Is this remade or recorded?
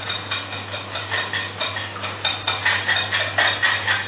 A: recorded